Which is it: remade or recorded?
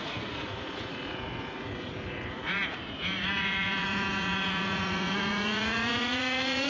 remade